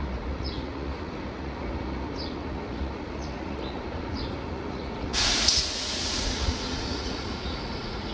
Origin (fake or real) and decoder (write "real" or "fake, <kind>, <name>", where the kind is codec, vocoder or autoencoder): fake, vocoder, Vocos